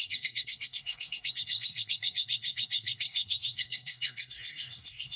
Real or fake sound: fake